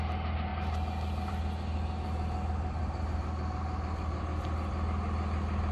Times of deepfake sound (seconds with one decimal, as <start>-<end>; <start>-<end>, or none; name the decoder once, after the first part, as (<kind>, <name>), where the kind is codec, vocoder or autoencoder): none